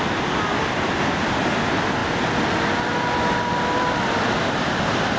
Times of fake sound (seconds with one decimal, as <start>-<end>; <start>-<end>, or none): none